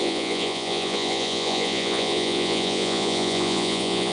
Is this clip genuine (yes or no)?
no